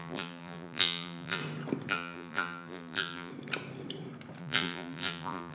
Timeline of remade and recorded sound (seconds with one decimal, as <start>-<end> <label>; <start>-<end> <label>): 0.0-1.4 remade; 1.4-1.9 recorded; 1.9-3.3 remade; 3.3-4.4 recorded; 4.4-5.5 remade